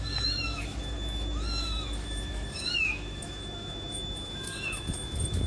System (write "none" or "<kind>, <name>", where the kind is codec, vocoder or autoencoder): autoencoder, DAC-VAE